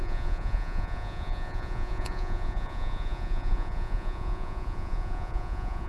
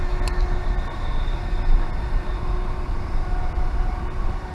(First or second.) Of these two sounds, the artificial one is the first